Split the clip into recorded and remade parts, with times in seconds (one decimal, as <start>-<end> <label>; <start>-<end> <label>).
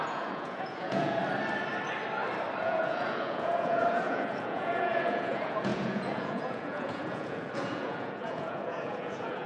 0.0-1.2 remade; 1.2-2.6 recorded; 2.6-9.5 remade